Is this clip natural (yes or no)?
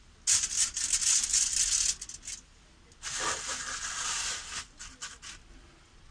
yes